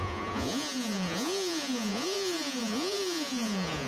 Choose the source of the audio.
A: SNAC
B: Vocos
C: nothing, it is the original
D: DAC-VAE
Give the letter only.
B